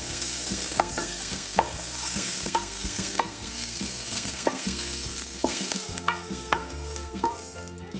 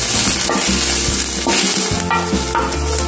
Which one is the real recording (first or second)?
second